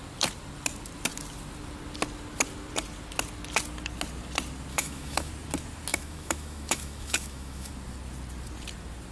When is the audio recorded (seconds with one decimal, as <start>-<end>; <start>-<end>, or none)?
0.0-4.7; 5.3-5.9; 7.7-9.1